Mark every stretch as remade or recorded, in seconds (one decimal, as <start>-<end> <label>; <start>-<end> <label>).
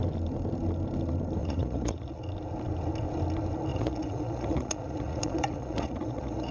0.0-1.4 recorded; 1.4-2.2 remade; 2.2-3.7 recorded; 3.7-6.5 remade